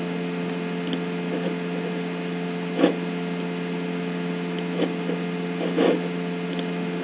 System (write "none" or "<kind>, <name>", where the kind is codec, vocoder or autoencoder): none